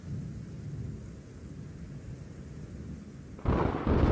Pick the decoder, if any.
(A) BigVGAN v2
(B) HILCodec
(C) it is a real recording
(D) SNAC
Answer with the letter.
C